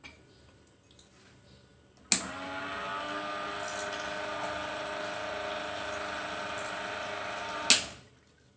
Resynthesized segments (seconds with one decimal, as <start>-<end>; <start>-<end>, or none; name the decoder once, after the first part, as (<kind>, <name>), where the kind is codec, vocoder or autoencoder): none